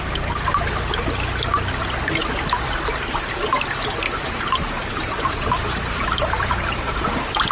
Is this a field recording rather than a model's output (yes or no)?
yes